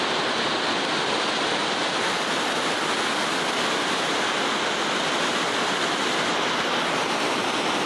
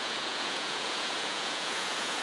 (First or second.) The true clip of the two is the first